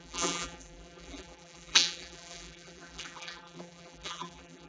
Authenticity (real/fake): fake